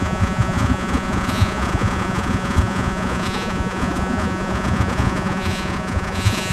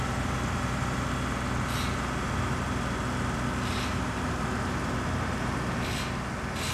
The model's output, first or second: first